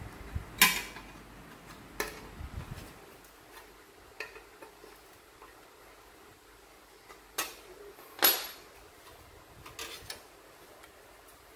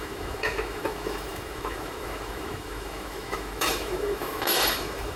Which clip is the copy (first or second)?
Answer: second